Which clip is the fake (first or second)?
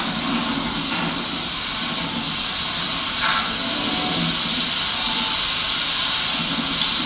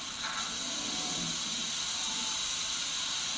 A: second